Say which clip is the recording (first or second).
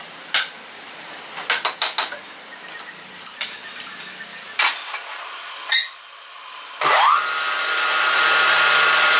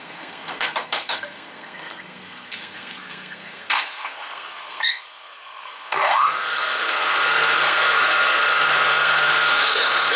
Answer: first